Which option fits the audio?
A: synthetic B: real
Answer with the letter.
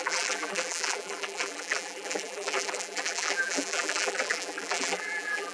A